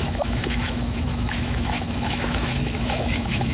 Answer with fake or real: fake